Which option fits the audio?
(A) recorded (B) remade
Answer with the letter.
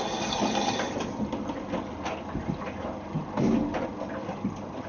A